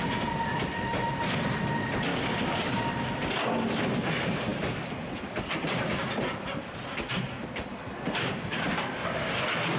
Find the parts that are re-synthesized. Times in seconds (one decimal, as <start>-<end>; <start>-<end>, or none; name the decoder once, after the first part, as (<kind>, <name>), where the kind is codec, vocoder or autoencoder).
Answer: 2.1-2.9 (codec, DAC)